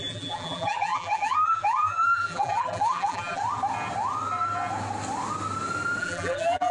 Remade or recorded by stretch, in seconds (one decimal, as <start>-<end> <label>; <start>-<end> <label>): 0.0-3.4 remade; 3.4-6.0 recorded; 6.0-6.7 remade